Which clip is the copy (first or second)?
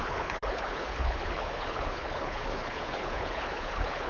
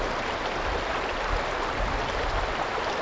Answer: first